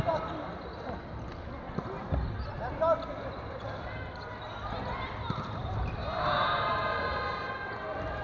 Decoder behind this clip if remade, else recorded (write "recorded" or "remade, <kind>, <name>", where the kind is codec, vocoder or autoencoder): recorded